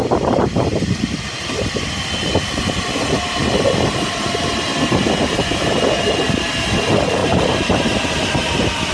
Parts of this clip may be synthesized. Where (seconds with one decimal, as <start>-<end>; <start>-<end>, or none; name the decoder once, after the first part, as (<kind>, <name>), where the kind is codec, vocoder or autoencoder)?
0.0-2.0 (vocoder, BigVGAN v2); 7.2-8.9

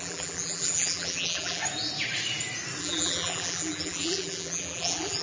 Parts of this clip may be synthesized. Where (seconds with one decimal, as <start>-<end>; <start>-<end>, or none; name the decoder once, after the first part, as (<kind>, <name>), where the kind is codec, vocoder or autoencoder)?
0.0-1.6 (vocoder, BigVGAN v2); 2.8-5.2